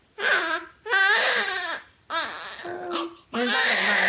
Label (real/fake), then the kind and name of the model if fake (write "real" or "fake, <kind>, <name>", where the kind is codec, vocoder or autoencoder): real